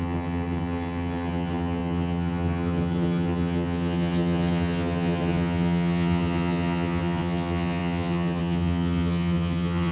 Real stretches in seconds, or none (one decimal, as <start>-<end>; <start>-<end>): none